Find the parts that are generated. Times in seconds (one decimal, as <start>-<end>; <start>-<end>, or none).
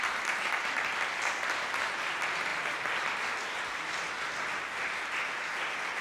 none